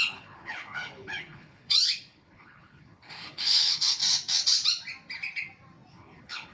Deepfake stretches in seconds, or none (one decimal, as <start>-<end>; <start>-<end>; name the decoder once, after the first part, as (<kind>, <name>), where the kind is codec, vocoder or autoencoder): 0.0-4.0 (codec, HILCodec); 5.9-6.5